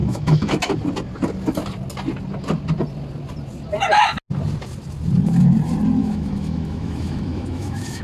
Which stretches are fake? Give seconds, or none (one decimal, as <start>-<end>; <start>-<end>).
0.0-0.7; 6.0-8.0